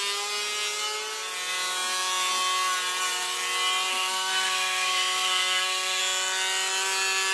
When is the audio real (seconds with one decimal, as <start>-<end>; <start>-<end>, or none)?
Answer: 0.0-3.9; 6.0-7.3